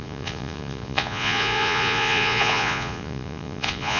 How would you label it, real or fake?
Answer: fake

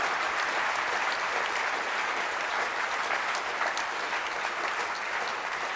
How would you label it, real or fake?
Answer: real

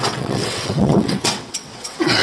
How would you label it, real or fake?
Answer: fake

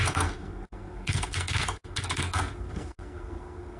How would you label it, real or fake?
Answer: fake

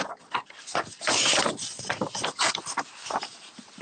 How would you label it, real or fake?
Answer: real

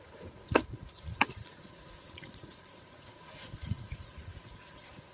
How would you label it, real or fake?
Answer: fake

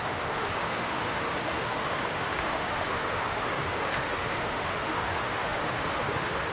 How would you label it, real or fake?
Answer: fake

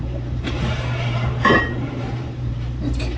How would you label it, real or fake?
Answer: fake